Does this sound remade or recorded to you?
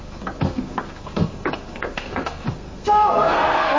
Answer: remade